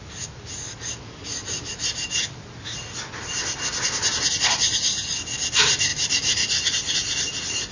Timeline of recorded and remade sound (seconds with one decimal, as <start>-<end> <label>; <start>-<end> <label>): 0.0-5.9 recorded; 5.9-6.5 remade; 6.5-7.7 recorded